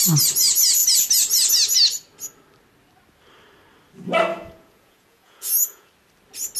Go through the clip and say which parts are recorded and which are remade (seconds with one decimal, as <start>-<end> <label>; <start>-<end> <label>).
0.0-4.3 recorded; 4.3-5.9 remade; 5.9-6.6 recorded